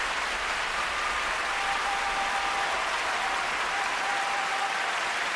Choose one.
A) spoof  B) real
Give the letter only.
A